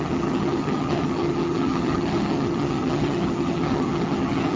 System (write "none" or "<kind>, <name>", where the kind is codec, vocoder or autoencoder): vocoder, HiFi-GAN